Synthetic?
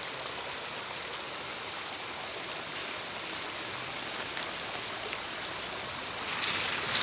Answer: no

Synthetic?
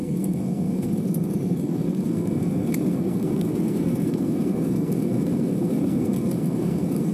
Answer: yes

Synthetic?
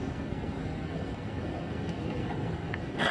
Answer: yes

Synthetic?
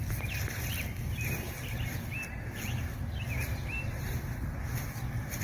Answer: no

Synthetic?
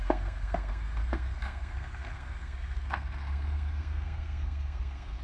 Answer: yes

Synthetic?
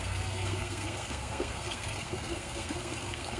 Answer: yes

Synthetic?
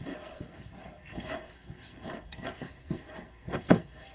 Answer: yes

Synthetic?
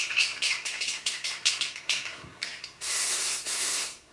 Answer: yes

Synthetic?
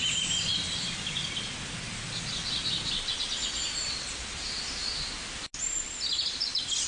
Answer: no